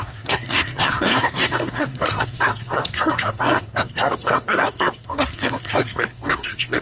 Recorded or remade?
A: remade